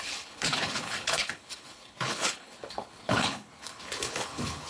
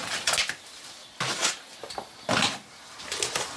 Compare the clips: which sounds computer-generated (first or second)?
first